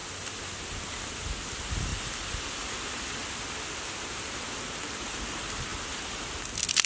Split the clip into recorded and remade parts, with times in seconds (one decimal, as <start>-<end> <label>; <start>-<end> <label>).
0.0-6.9 recorded